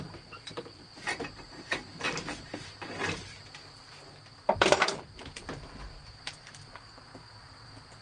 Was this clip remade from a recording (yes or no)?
yes